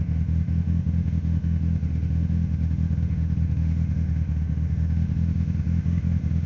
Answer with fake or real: fake